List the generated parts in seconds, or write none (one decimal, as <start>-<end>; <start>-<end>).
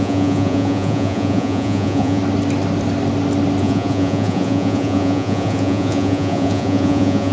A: 0.0-2.2; 3.6-7.3